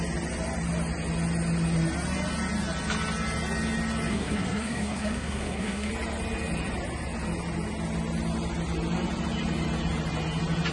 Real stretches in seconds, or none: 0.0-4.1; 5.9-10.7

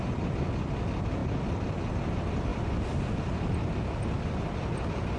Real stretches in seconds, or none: 0.0-5.2

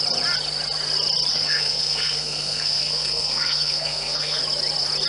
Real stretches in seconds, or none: 0.0-1.3; 4.4-5.1